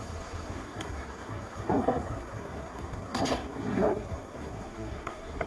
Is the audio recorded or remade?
remade